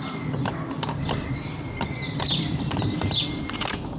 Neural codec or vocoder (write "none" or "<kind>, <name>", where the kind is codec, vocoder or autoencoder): vocoder, BigVGAN v2